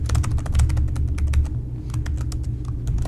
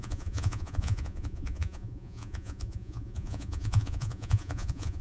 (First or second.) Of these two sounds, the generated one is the second